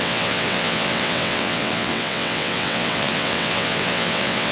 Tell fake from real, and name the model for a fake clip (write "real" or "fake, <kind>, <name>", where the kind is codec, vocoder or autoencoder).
fake, vocoder, WaveNeXt